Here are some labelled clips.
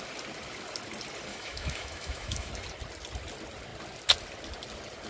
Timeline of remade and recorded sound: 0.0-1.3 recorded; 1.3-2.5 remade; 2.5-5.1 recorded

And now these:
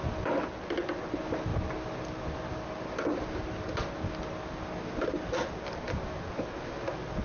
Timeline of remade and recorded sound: 0.0-7.2 recorded

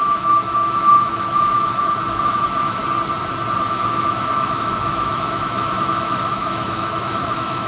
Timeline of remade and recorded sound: 0.0-2.8 remade; 2.8-3.7 recorded; 3.7-7.7 remade

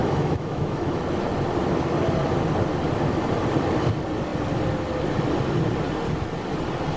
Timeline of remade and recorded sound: 0.0-1.0 remade; 1.0-7.0 recorded

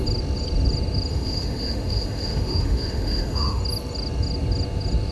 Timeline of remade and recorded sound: 0.0-1.1 recorded; 1.1-3.6 remade; 3.6-5.1 recorded